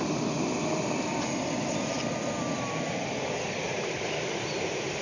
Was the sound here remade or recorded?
recorded